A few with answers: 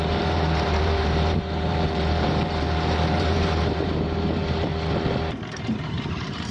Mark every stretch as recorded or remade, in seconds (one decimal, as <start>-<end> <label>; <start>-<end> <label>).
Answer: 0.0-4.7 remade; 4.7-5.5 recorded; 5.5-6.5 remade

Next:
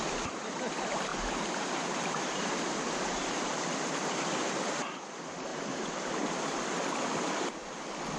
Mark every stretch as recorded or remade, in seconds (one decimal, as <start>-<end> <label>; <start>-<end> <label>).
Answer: 0.0-1.1 recorded; 1.1-4.7 remade; 4.7-5.5 recorded; 5.5-6.1 remade; 6.1-8.2 recorded

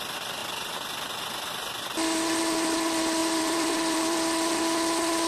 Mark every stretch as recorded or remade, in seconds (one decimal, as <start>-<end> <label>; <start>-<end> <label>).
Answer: 0.0-3.2 recorded; 3.2-4.6 remade; 4.6-5.3 recorded

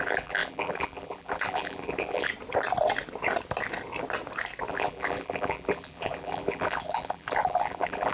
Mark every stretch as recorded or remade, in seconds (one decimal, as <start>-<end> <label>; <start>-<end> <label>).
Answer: 0.0-2.3 remade; 2.3-4.7 recorded; 4.7-8.1 remade

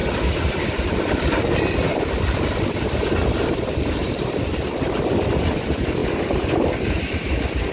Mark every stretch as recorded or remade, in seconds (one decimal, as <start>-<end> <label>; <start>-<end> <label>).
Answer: 0.0-0.7 recorded; 0.7-7.7 remade

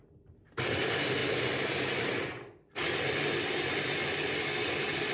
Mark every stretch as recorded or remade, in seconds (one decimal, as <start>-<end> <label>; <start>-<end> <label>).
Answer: 0.0-1.2 recorded; 1.2-1.7 remade; 1.7-5.1 recorded